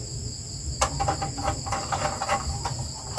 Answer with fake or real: real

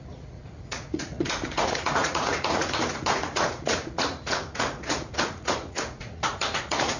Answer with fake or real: fake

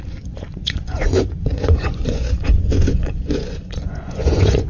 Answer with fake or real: fake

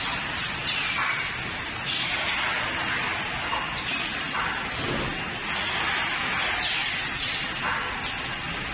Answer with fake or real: real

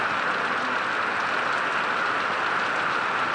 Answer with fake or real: real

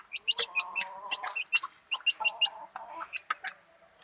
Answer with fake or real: real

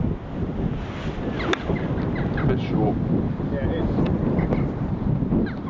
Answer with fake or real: real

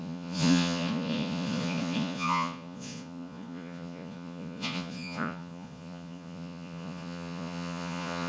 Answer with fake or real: fake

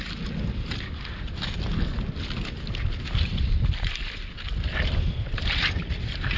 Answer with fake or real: real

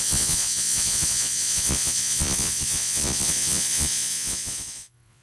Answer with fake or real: fake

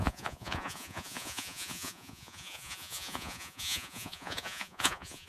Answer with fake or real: fake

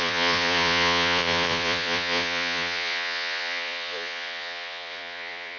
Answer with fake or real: fake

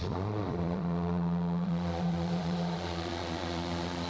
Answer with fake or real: fake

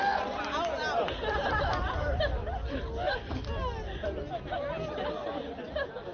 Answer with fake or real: real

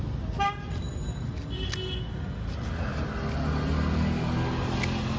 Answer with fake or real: real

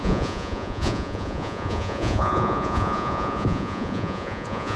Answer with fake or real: fake